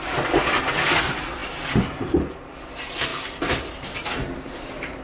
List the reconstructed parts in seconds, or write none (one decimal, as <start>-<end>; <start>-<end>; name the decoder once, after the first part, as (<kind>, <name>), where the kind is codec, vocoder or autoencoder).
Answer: none